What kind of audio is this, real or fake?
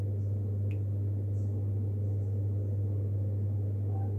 real